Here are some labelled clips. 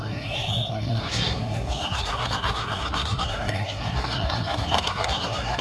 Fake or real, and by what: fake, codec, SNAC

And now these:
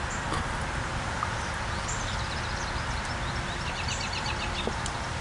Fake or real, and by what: real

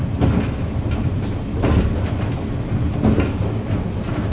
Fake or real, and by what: real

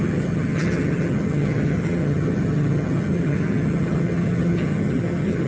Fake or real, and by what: fake, vocoder, HiFi-GAN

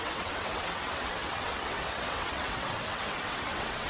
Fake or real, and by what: fake, vocoder, WaveNeXt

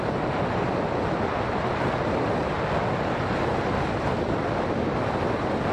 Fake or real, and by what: real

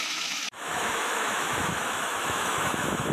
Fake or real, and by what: fake, autoencoder, DAC-VAE